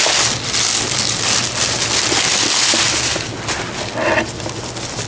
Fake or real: real